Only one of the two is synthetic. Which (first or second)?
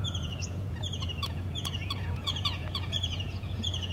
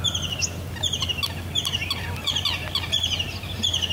first